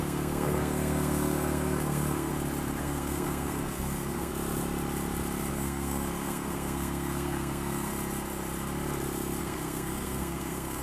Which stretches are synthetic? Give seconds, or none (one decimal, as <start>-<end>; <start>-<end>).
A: 0.0-2.3; 2.8-4.3; 5.5-7.9; 9.4-10.8